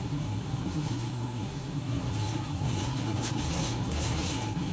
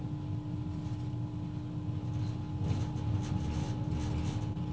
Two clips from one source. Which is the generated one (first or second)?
first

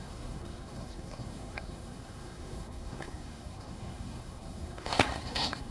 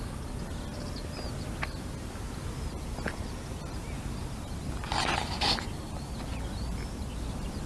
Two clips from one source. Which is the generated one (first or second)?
first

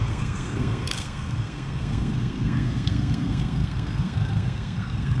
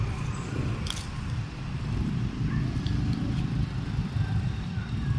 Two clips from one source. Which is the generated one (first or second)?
first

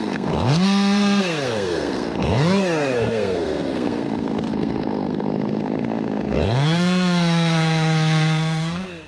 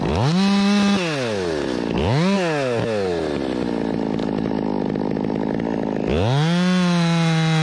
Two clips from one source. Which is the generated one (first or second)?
first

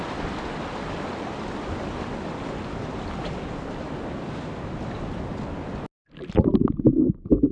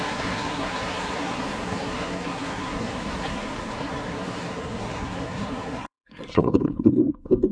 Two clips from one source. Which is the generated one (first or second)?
second